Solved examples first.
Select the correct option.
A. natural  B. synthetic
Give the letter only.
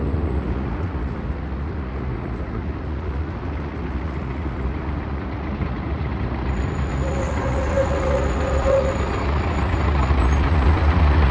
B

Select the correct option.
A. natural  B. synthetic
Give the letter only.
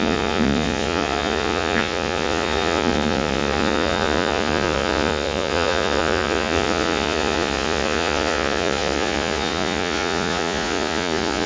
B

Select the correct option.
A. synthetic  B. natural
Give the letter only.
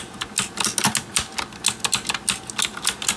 B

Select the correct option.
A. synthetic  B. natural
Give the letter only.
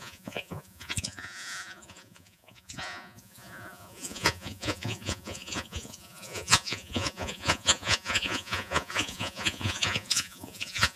A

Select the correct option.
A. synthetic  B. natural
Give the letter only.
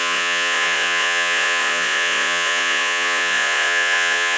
A